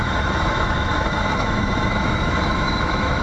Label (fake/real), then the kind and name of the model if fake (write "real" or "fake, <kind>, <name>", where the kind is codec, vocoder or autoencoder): fake, autoencoder, DAC-VAE